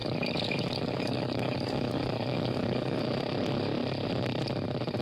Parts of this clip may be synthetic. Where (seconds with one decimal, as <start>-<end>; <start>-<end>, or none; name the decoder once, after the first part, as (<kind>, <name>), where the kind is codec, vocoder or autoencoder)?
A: 0.0-3.0 (codec, DAC)